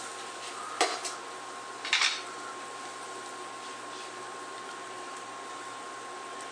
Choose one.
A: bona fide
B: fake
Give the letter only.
A